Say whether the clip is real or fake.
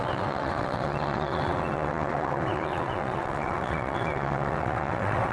fake